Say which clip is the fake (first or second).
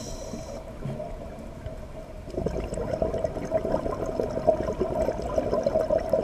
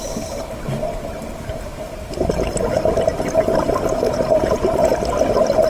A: second